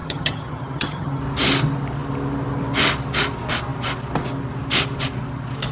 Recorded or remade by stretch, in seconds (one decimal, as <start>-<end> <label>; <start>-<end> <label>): 0.0-1.2 remade; 1.2-5.7 recorded